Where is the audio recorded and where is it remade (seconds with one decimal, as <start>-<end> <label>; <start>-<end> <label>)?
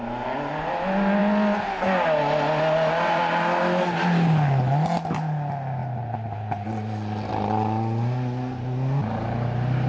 0.0-9.9 recorded